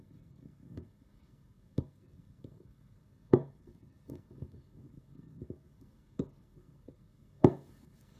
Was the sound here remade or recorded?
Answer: remade